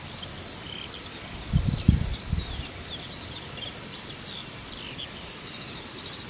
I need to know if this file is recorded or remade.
recorded